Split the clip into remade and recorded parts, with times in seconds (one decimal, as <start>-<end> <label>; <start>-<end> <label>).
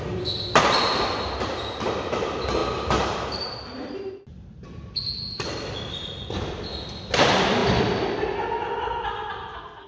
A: 0.0-9.9 recorded